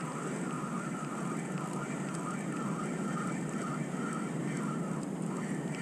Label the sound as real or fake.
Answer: real